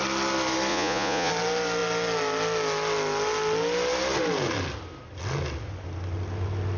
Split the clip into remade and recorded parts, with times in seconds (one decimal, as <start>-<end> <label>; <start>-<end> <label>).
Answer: 0.0-0.7 recorded; 0.7-1.3 remade; 1.3-6.8 recorded